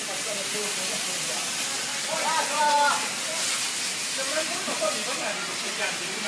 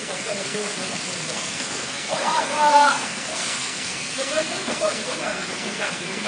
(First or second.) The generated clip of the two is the second